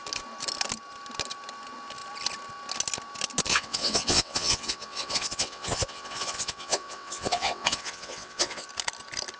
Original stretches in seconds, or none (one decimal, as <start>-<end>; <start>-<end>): 0.0-3.5; 8.7-9.4